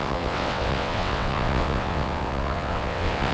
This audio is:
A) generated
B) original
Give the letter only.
A